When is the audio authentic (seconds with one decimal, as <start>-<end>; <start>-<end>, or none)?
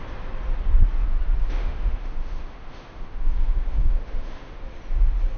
0.0-1.4; 4.6-5.4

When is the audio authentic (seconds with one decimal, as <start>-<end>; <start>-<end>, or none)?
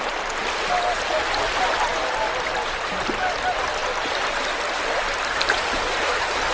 0.0-6.5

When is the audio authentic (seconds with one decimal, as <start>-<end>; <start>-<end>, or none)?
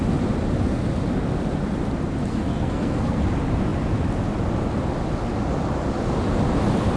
0.0-2.2; 3.2-7.0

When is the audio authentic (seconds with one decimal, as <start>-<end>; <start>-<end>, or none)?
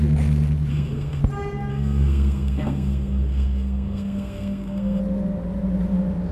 0.0-0.7; 1.2-1.7; 5.0-6.3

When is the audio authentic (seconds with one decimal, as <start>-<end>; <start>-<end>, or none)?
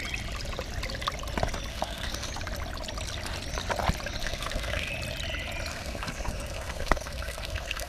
0.0-1.7; 2.3-4.2; 4.9-5.7